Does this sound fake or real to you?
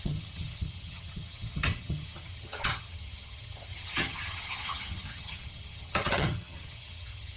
fake